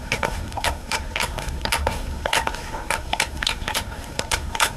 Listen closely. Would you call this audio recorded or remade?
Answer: remade